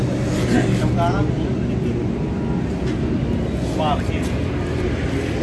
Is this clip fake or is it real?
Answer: real